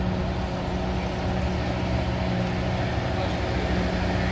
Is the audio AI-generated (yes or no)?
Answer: no